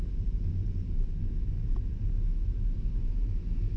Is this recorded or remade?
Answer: remade